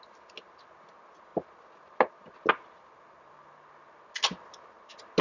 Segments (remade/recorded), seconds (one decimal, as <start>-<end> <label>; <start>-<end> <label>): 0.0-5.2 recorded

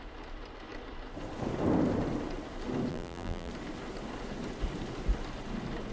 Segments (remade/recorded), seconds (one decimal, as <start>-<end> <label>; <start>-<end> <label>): 0.0-2.9 recorded; 2.9-3.5 remade; 3.5-5.9 recorded

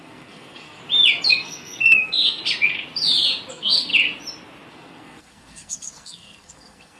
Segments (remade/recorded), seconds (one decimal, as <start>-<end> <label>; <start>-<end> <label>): 0.0-0.8 remade; 0.8-1.3 recorded; 1.3-2.4 remade; 2.4-3.5 recorded; 3.5-3.9 remade; 3.9-4.7 recorded; 4.7-7.0 remade

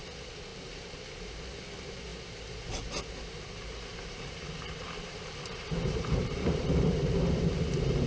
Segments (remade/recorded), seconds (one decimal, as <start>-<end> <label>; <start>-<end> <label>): 0.0-0.5 recorded; 0.5-1.1 remade; 1.1-3.9 recorded; 3.9-7.5 remade; 7.5-8.1 recorded

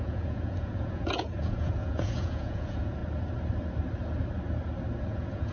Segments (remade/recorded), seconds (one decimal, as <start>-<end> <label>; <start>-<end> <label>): 0.0-3.0 remade; 3.0-5.0 recorded; 5.0-5.5 remade

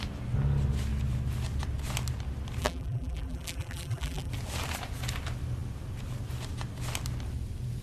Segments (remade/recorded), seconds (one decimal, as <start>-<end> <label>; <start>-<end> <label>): 0.0-2.6 recorded; 2.6-4.3 remade; 4.3-7.8 recorded

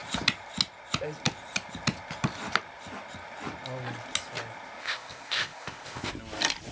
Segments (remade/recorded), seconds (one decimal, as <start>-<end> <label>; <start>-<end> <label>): 0.0-4.8 recorded; 4.8-6.1 remade; 6.1-6.7 recorded

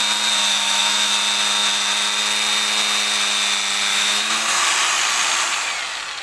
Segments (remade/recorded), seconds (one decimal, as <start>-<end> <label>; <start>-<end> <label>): 0.0-0.5 recorded; 0.5-1.1 remade; 1.1-3.9 recorded; 3.9-4.6 remade; 4.6-6.2 recorded